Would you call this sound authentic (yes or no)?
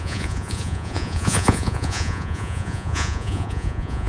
no